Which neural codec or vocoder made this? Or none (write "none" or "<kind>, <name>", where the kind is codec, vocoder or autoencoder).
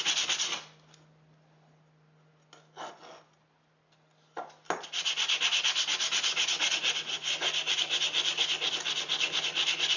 none